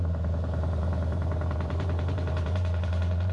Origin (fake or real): fake